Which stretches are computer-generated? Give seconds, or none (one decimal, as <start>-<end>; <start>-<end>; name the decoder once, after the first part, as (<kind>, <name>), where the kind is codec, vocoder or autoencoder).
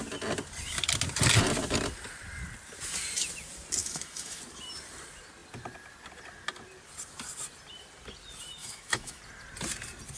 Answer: 3.8-4.4 (autoencoder, DAC-VAE); 8.6-9.2